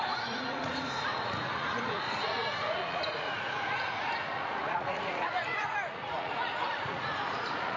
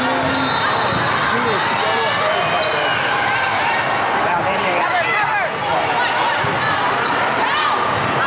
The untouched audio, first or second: second